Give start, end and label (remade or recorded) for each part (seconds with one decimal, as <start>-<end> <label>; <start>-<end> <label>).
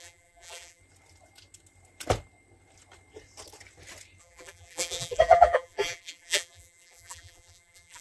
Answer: 0.0-0.8 remade; 0.8-4.2 recorded; 4.2-8.0 remade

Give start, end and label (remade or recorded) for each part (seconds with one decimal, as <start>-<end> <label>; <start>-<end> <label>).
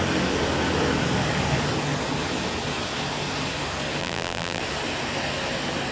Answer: 0.0-4.0 recorded; 4.0-4.6 remade; 4.6-5.9 recorded